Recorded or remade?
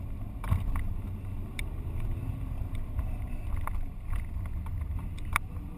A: recorded